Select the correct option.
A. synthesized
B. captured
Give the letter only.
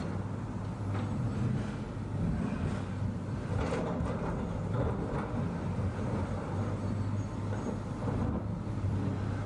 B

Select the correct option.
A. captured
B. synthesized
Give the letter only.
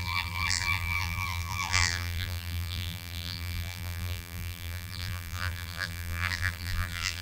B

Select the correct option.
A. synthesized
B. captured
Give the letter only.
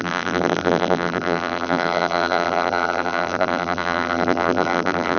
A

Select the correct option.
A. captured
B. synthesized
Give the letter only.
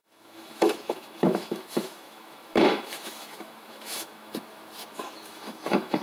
B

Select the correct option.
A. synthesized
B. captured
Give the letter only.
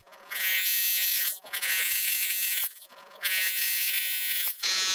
A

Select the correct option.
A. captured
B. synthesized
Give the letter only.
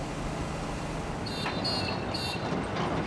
A